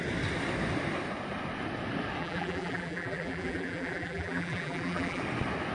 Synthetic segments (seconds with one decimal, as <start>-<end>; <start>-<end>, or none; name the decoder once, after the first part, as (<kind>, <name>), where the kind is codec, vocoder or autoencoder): 2.2-5.2 (vocoder, BigVGAN v2)